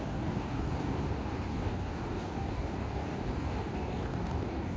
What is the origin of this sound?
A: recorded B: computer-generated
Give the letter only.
B